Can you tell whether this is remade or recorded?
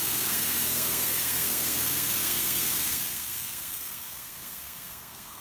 remade